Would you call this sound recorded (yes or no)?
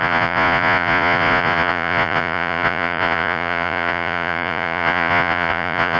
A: no